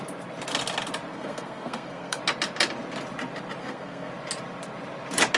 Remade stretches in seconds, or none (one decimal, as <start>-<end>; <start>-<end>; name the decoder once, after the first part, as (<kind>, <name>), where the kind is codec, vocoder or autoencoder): 1.1-2.2 (codec, SNAC); 3.6-4.1